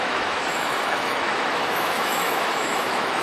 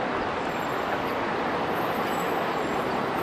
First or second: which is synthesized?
first